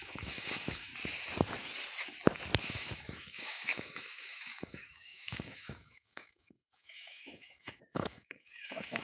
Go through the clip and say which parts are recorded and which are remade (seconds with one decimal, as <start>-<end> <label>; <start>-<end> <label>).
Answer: 0.0-0.9 remade; 0.9-2.6 recorded; 2.6-9.0 remade